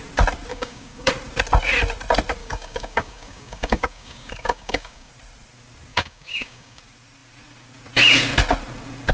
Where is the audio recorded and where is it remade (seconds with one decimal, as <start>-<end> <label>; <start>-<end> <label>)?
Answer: 0.0-0.5 recorded; 0.5-1.1 remade; 1.1-2.4 recorded; 2.4-5.1 remade; 5.1-5.9 recorded; 5.9-6.8 remade; 6.8-9.1 recorded